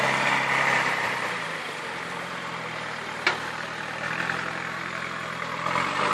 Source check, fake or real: fake